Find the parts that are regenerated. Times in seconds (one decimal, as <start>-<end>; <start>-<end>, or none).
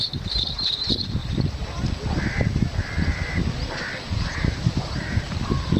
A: 0.0-1.2; 4.2-5.8